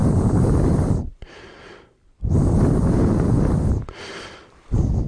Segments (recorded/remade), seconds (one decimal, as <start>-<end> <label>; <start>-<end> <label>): 0.0-5.1 remade